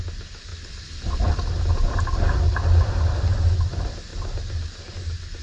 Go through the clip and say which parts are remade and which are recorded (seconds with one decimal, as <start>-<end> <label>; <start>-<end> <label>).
0.0-5.4 recorded